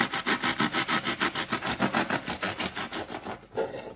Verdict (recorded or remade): recorded